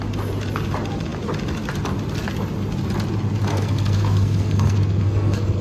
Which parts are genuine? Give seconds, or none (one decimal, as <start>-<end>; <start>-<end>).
0.0-3.5